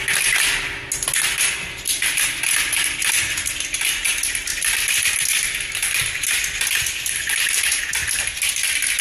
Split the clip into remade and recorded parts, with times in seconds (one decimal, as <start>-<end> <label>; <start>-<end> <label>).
0.0-4.5 recorded; 4.5-7.8 remade; 7.8-9.0 recorded